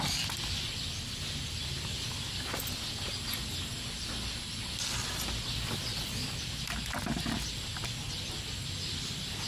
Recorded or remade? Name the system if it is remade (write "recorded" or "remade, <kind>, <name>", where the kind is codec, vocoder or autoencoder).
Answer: recorded